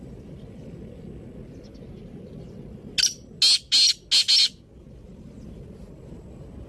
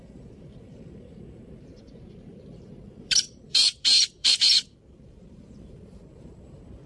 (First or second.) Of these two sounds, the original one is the first